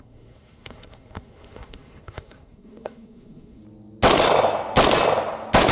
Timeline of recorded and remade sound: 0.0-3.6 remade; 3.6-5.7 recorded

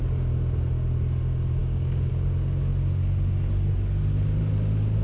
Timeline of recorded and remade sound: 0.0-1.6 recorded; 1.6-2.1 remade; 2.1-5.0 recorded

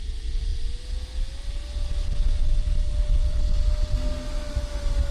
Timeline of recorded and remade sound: 0.0-5.1 recorded

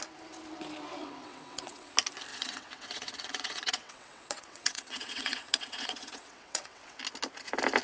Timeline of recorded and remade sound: 0.0-1.0 recorded; 1.0-1.9 remade; 1.9-2.3 recorded; 2.3-7.0 remade; 7.0-7.8 recorded

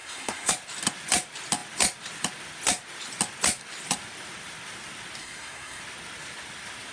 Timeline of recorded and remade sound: 0.0-0.5 remade; 0.5-5.2 recorded; 5.2-5.8 remade; 5.8-6.9 recorded

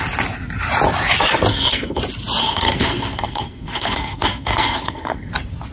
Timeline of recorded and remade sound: 0.0-1.5 recorded; 1.5-2.0 remade; 2.0-2.4 recorded; 2.4-5.3 remade; 5.3-5.7 recorded